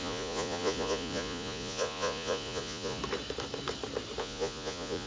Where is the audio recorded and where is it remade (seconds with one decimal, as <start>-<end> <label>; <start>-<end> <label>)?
0.0-3.0 remade; 3.0-4.2 recorded; 4.2-5.1 remade